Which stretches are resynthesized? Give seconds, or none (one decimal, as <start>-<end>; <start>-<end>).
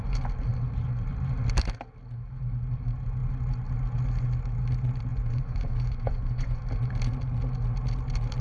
5.1-6.6